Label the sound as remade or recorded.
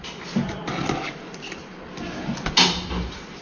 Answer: recorded